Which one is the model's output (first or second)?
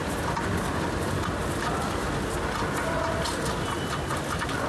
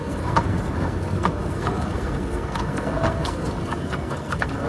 second